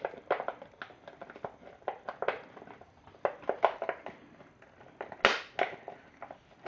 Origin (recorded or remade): recorded